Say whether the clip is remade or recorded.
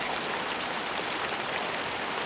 recorded